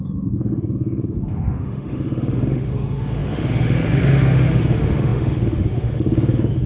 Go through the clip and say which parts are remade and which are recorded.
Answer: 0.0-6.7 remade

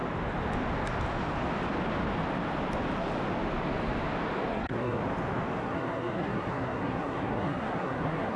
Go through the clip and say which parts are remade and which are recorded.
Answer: 0.0-4.5 recorded; 4.5-5.0 remade; 5.0-5.6 recorded; 5.6-8.4 remade

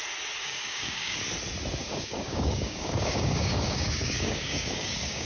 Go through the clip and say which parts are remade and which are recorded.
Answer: 0.0-0.4 recorded; 0.4-1.2 remade; 1.2-1.8 recorded; 1.8-5.3 remade

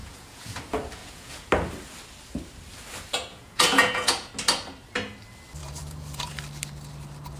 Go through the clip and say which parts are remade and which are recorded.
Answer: 0.0-0.6 remade; 0.6-1.0 recorded; 1.0-1.5 remade; 1.5-3.3 recorded; 3.3-4.3 remade; 4.3-5.6 recorded; 5.6-6.3 remade; 6.3-7.4 recorded

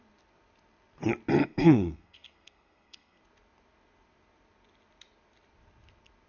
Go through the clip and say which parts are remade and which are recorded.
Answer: 0.0-1.4 recorded; 1.4-3.2 remade; 3.2-6.3 recorded